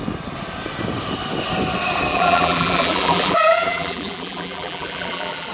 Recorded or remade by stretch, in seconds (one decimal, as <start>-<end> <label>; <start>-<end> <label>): 0.0-2.1 recorded; 2.1-5.5 remade